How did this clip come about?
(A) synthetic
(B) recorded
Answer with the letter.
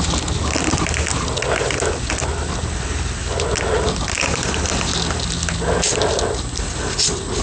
B